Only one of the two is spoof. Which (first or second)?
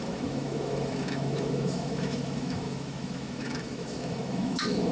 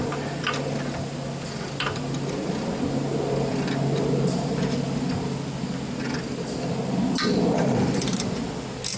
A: first